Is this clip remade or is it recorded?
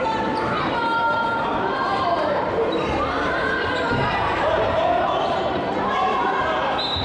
remade